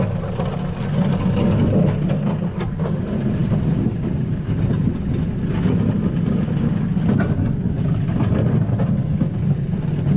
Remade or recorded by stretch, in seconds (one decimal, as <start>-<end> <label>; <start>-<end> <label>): 0.0-3.4 recorded; 3.4-4.8 remade; 4.8-10.2 recorded